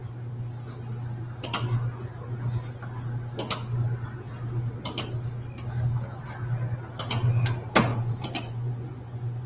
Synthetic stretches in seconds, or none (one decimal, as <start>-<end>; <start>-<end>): 7.9-9.5